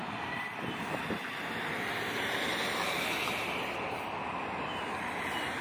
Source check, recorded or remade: remade